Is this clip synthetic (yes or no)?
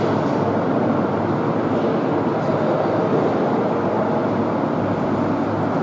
no